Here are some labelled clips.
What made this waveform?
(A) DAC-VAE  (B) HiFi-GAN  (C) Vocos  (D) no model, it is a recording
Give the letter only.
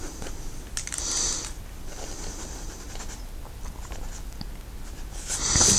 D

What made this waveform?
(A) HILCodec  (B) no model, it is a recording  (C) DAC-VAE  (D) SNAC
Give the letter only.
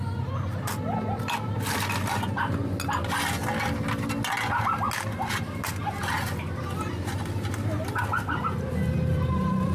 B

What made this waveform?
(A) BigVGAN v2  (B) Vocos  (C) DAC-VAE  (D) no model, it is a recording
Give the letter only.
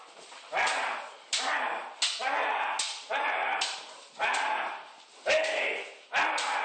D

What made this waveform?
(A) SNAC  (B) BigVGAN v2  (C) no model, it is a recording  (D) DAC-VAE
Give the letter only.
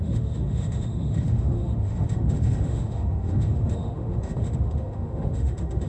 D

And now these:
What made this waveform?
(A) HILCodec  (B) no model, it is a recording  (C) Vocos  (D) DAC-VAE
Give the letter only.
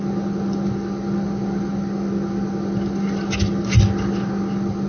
B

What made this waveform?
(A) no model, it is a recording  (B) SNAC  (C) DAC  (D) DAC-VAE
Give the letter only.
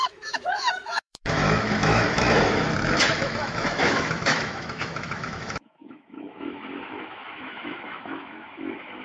D